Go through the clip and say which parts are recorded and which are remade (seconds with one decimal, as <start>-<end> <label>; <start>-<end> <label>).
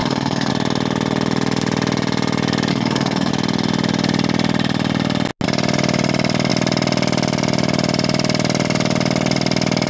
0.0-0.5 remade; 0.5-2.7 recorded; 2.7-3.3 remade; 3.3-9.9 recorded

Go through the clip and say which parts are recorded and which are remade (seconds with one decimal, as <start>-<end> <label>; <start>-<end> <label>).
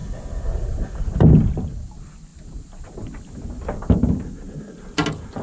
0.0-5.4 recorded